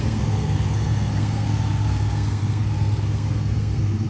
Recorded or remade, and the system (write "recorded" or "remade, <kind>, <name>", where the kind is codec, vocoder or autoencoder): remade, codec, SNAC